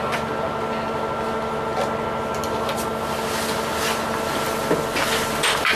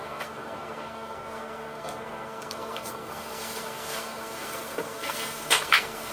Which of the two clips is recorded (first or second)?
first